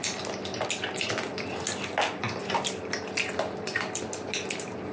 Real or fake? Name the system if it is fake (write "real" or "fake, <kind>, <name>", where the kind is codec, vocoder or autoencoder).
real